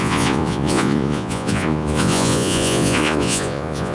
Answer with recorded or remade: remade